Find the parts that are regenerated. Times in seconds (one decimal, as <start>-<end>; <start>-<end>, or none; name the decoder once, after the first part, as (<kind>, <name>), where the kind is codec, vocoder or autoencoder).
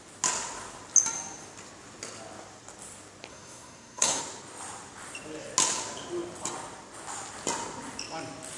3.3-4.2 (codec, SNAC)